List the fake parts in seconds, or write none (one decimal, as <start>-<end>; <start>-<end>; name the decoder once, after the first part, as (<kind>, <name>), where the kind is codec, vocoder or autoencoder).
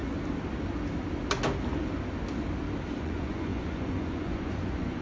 3.0-5.0 (vocoder, Vocos)